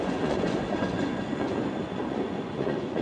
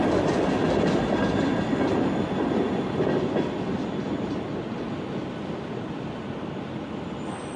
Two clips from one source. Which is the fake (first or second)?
first